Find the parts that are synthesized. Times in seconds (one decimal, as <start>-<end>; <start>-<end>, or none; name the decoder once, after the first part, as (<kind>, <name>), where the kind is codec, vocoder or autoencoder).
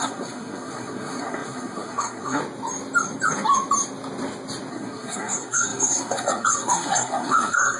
0.0-2.4 (codec, SNAC); 4.7-7.8